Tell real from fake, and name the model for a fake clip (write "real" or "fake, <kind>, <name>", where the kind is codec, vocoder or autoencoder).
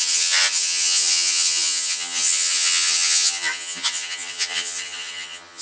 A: fake, vocoder, HiFi-GAN